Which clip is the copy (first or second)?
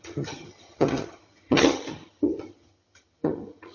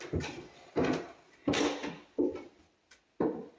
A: first